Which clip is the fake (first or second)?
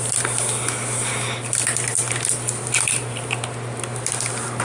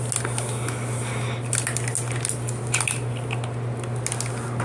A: first